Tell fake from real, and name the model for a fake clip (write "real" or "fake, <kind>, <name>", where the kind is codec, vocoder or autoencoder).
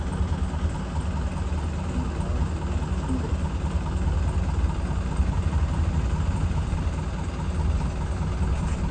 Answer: real